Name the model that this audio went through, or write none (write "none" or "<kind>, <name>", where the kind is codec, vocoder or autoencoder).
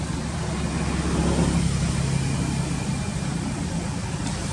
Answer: none